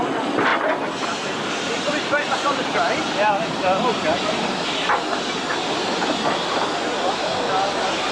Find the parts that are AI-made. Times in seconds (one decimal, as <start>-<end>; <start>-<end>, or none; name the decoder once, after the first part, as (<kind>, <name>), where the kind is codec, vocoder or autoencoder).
none